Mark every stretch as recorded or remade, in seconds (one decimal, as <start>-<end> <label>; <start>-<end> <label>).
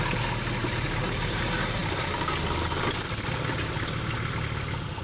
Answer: 0.0-0.6 recorded; 0.6-1.4 remade; 1.4-5.0 recorded